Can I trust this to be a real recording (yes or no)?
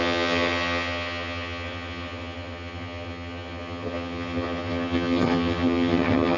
no